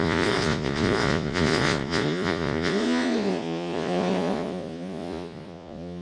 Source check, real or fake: fake